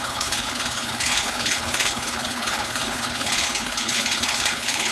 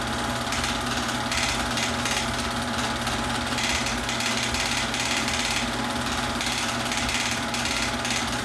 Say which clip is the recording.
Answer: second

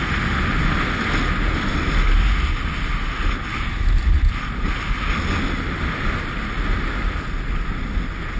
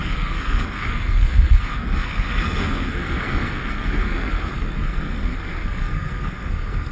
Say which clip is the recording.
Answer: first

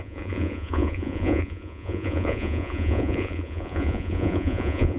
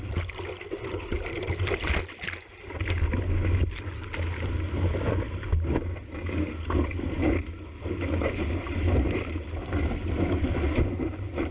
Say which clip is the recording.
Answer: second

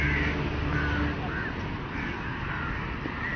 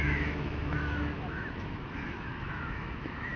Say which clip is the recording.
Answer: first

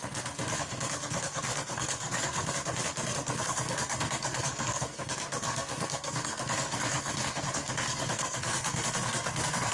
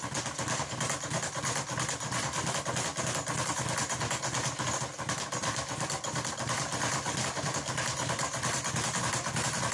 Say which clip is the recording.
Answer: second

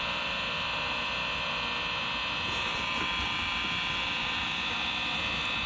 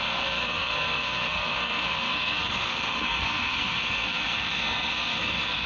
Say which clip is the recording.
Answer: first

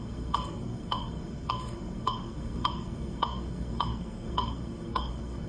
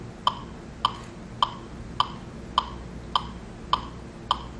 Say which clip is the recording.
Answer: second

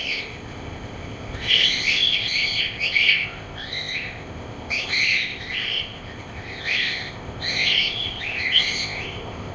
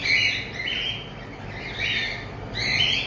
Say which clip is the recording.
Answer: second